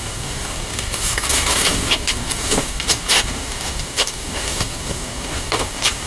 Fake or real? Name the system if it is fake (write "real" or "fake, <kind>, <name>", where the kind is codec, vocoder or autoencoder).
fake, codec, DAC